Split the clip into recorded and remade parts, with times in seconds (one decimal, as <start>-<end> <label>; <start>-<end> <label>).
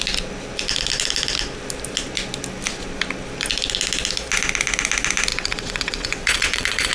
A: 0.0-5.3 recorded; 5.3-6.9 remade